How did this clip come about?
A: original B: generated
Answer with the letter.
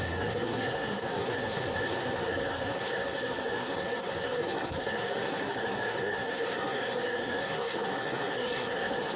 B